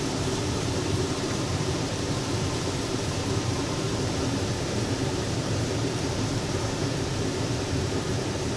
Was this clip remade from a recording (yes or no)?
yes